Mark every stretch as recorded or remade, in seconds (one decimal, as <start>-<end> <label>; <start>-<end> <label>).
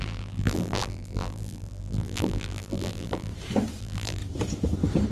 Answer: 0.0-3.3 remade; 3.3-3.8 recorded; 3.8-4.2 remade; 4.2-5.1 recorded